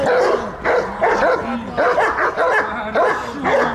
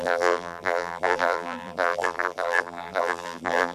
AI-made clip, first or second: second